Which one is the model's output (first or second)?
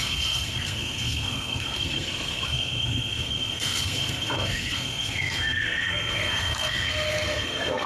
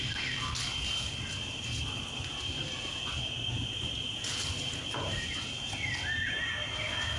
first